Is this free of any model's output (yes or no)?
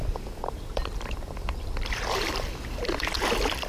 no